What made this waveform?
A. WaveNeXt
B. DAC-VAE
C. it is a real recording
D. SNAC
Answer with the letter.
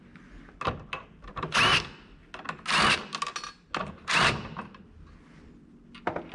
C